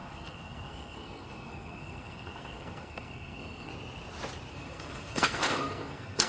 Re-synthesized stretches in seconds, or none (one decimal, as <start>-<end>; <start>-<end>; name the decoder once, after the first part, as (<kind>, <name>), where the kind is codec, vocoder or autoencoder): 0.0-3.7 (codec, SNAC); 4.5-6.3